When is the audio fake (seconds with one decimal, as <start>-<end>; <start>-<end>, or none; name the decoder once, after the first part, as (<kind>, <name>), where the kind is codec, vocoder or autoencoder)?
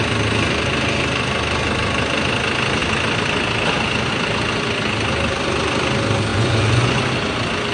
6.3-7.0 (vocoder, Vocos)